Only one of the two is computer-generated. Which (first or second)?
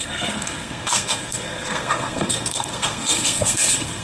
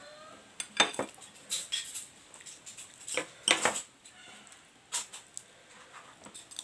first